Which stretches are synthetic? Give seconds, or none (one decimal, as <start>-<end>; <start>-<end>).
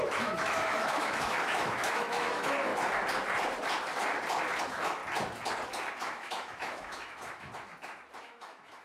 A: 0.0-2.7; 4.6-5.0; 6.0-7.5; 8.2-8.8